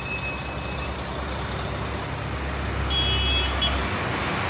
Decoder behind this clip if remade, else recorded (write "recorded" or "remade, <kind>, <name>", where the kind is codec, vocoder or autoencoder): recorded